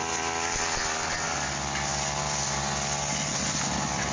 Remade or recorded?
recorded